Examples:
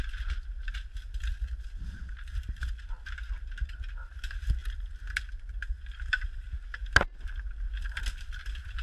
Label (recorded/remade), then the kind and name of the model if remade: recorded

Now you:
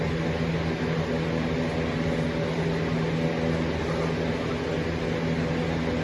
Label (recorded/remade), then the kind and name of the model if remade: recorded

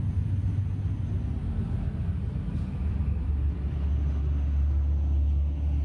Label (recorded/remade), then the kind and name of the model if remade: recorded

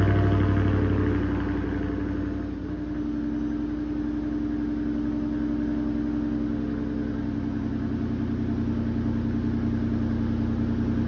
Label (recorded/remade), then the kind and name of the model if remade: recorded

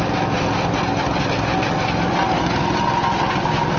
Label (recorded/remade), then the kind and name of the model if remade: recorded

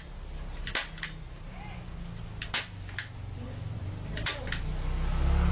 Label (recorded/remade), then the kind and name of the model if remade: recorded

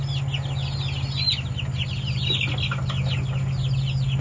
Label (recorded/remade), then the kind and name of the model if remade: recorded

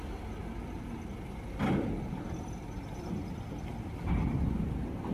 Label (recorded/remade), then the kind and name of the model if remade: recorded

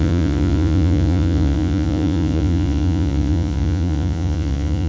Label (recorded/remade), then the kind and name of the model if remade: remade, vocoder, Vocos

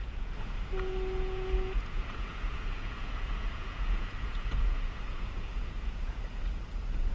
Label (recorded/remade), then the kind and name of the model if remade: remade, vocoder, Vocos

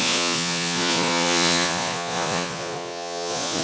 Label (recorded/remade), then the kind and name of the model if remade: remade, vocoder, Vocos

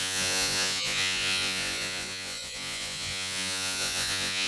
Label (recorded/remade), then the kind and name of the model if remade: remade, vocoder, Vocos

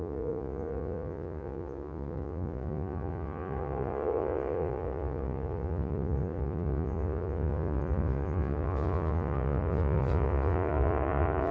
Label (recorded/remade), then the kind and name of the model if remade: remade, vocoder, Vocos